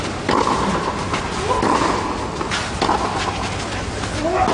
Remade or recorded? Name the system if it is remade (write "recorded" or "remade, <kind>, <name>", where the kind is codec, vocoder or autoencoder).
recorded